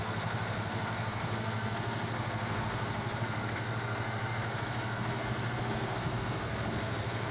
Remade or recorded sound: remade